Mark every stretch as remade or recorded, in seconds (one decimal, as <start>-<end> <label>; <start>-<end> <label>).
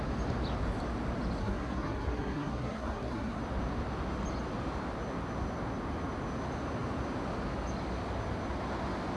0.0-1.4 recorded; 1.4-3.4 remade; 3.4-9.2 recorded